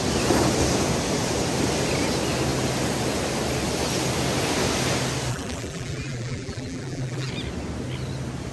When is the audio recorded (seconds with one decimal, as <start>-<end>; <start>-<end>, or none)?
0.0-5.3; 7.3-8.5